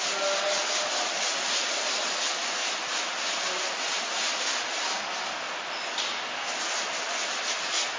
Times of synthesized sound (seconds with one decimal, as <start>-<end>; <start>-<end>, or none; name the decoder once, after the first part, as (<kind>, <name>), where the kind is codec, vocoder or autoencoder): none